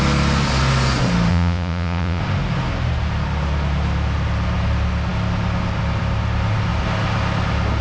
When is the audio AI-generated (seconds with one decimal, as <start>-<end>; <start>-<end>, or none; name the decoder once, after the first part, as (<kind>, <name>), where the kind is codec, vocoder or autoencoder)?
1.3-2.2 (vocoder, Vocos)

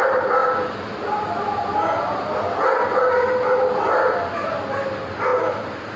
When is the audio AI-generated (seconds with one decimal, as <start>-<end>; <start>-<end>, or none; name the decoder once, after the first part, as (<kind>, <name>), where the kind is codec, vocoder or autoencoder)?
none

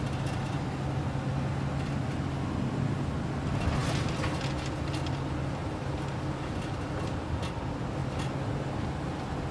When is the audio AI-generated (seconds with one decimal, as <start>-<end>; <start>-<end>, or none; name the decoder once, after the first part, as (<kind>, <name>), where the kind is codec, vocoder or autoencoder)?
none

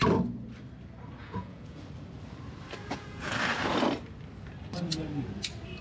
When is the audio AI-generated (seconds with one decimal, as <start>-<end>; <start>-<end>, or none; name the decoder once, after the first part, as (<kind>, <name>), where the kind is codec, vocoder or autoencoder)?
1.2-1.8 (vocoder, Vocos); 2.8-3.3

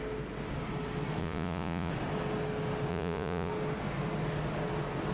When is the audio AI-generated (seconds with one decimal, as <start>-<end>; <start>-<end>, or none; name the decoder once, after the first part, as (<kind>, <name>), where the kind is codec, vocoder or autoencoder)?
1.2-1.9 (vocoder, Vocos); 2.9-3.5